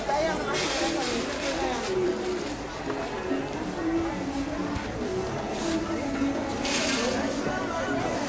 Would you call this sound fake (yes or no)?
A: no